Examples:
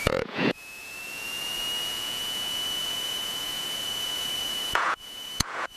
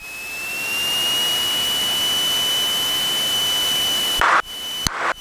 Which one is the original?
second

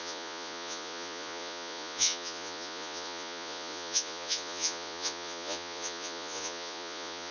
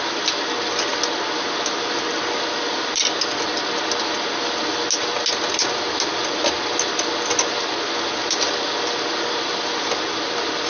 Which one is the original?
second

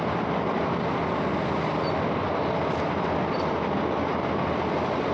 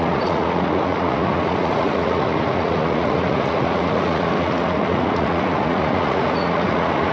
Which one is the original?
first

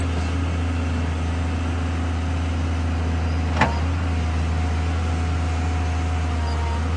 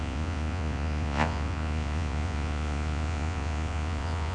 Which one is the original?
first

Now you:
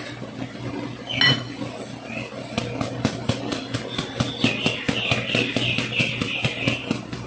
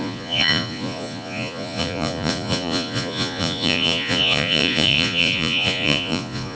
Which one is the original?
first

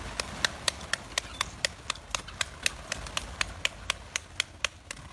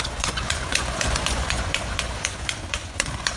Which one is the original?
first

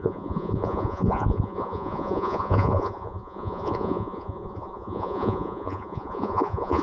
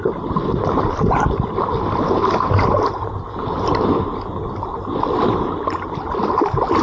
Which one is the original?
second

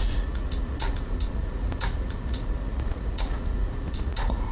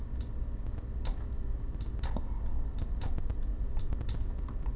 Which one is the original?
second